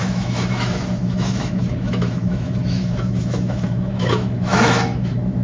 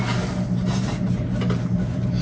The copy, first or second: first